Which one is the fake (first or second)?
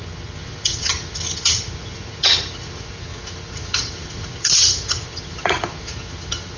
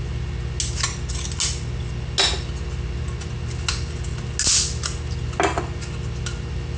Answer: first